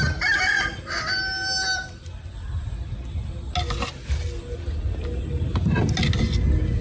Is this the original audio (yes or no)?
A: yes